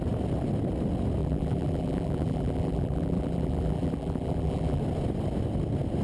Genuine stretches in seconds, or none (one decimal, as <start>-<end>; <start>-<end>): 0.0-1.2; 4.8-6.0